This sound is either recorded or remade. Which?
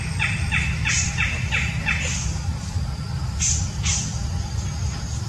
recorded